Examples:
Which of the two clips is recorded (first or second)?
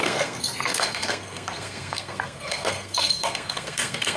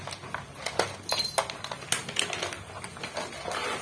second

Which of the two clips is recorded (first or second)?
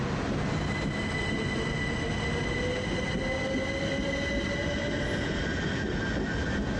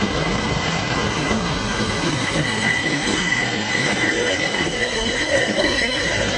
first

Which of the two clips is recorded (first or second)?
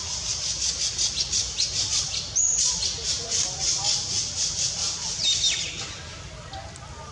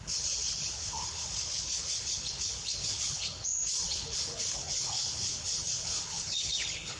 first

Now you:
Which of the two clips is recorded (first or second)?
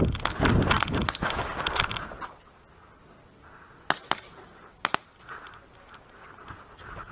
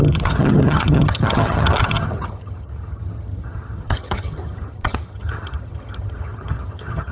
first